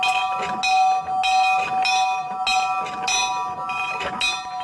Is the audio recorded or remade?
recorded